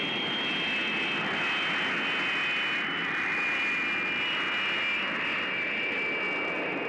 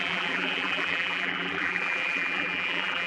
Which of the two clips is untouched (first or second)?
first